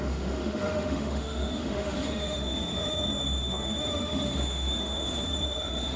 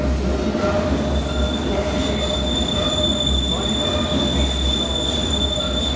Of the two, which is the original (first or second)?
second